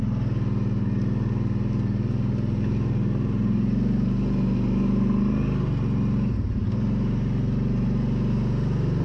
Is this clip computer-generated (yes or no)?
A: no